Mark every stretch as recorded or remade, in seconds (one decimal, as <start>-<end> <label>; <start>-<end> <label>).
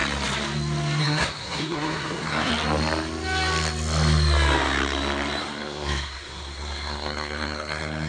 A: 0.0-1.0 recorded; 1.0-2.5 remade; 2.5-5.4 recorded; 5.4-8.1 remade